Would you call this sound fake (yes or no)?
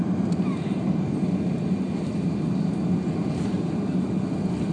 no